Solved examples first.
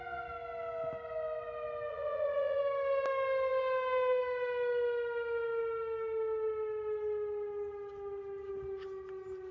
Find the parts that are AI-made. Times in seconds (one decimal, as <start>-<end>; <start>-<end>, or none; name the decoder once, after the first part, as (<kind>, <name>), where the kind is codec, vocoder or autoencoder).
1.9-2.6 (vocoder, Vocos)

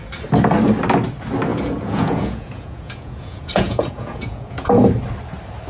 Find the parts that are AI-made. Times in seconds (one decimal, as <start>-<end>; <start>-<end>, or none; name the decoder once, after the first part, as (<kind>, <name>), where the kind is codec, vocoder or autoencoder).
1.5-4.9 (vocoder, Vocos)

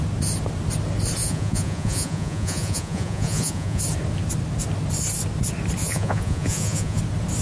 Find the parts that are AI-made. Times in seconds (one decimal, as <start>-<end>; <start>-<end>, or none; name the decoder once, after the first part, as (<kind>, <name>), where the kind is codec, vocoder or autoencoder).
1.2-3.8 (vocoder, Vocos); 5.8-7.0